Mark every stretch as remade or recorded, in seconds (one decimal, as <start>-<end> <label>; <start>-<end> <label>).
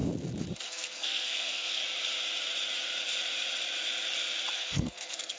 0.0-0.6 recorded; 0.6-1.8 remade; 1.8-4.5 recorded; 4.5-5.4 remade